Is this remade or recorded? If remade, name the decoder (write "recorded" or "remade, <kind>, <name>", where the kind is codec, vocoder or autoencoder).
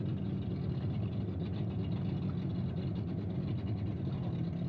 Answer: recorded